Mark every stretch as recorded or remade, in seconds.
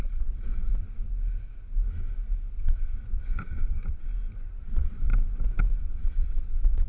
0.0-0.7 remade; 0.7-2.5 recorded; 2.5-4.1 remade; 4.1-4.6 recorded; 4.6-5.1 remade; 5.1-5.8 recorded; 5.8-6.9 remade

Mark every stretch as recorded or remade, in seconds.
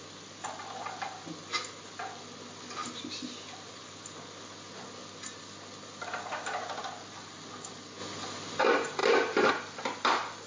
0.0-10.5 recorded